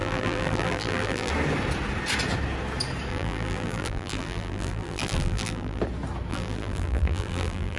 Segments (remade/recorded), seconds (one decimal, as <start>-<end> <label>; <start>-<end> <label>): 0.0-1.3 remade; 1.3-3.1 recorded; 3.1-5.8 remade; 5.8-6.3 recorded; 6.3-7.8 remade